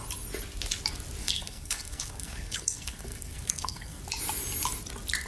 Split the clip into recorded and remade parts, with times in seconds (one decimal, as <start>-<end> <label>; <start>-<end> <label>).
0.0-1.2 recorded; 1.2-4.0 remade; 4.0-5.3 recorded